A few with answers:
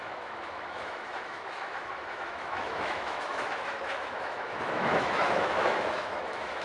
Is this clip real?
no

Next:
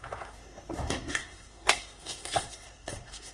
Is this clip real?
no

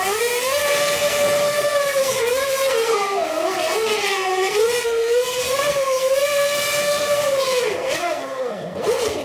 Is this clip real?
no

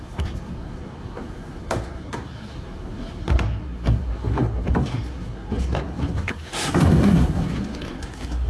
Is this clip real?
no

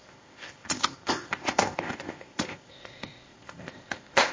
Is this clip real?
no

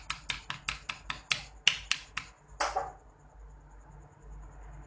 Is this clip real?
yes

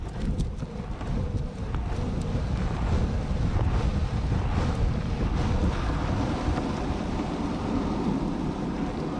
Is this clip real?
yes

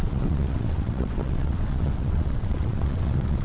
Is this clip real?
no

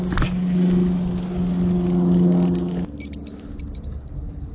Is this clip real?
yes